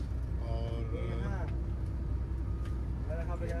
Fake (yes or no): no